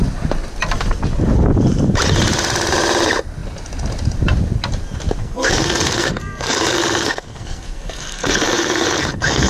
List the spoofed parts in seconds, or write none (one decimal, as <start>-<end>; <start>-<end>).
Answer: 5.2-9.5